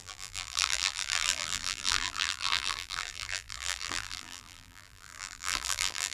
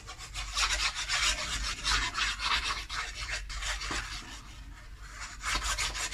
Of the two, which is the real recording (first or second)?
second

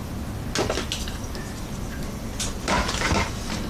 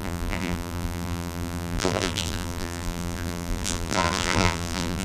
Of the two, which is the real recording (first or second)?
first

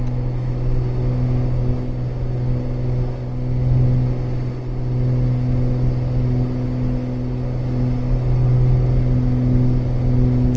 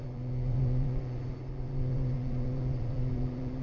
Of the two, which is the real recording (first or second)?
first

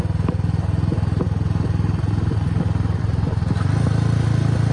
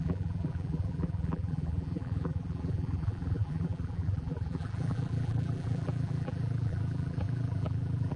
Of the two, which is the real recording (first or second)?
first